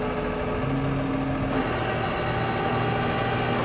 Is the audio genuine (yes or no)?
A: yes